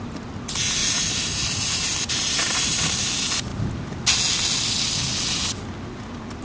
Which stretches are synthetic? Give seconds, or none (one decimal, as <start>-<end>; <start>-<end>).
0.8-3.1